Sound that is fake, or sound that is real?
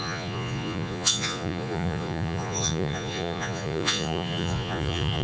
fake